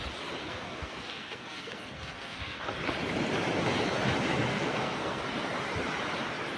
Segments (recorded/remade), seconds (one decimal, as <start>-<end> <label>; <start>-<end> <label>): 0.0-0.4 recorded; 0.4-2.6 remade; 2.6-4.5 recorded; 4.5-5.2 remade; 5.2-6.6 recorded